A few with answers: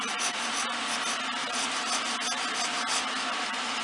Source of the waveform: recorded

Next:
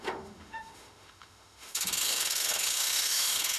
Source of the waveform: remade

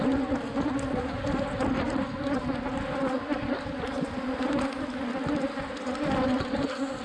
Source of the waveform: recorded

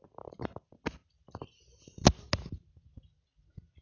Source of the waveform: recorded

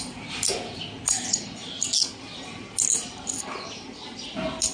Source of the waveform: recorded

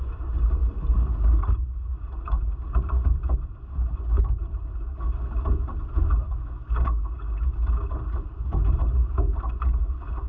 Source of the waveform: recorded